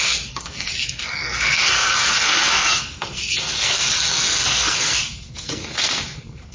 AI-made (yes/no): yes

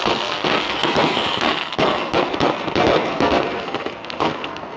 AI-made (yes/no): yes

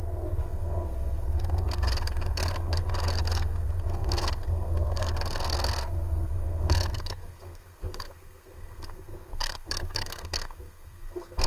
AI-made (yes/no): yes